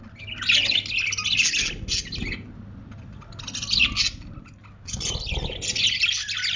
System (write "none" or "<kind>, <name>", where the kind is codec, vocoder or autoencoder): none